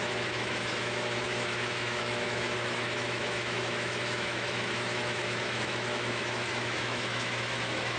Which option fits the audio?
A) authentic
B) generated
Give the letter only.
B